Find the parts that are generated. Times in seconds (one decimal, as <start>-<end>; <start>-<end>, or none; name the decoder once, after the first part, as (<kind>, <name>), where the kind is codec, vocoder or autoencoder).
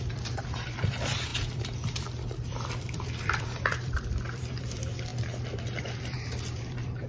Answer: 0.0-5.1 (vocoder, BigVGAN v2); 5.8-7.1